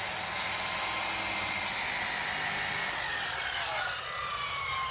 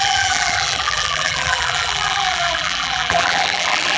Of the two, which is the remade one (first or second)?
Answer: second